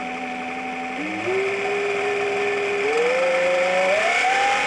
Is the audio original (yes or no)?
yes